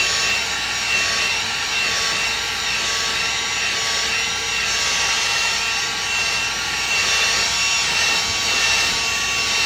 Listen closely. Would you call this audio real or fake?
real